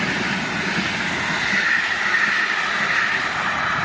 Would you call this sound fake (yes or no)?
no